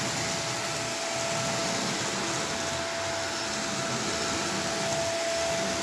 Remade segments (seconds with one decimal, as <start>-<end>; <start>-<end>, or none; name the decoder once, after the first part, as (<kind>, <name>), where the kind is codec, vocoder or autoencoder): none